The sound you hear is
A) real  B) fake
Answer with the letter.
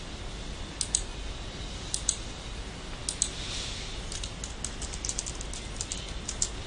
A